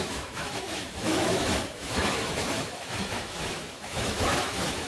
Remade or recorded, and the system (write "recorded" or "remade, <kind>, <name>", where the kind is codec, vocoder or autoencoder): remade, autoencoder, DAC-VAE